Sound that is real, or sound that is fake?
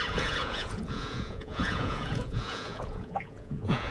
fake